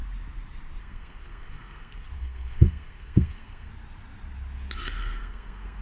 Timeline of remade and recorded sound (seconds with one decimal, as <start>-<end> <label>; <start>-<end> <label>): 0.0-0.8 recorded; 0.8-3.7 remade; 3.7-5.0 recorded; 5.0-5.8 remade